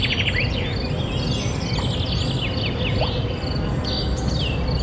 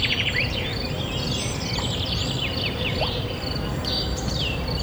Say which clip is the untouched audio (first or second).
first